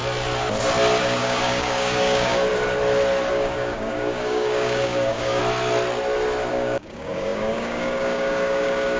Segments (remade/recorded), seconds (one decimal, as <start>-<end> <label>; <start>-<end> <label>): 0.0-1.0 recorded; 1.0-2.5 remade; 2.5-3.3 recorded; 3.3-5.4 remade; 5.4-6.5 recorded; 6.5-9.0 remade